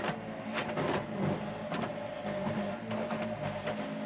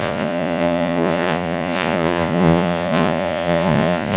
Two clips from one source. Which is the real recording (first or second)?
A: first